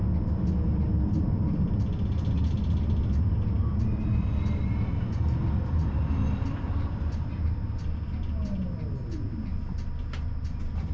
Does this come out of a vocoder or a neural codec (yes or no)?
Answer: no